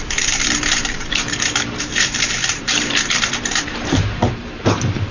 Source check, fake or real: fake